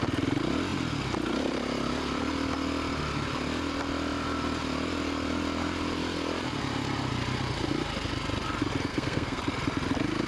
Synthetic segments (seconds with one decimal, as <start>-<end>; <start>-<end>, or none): 8.9-9.4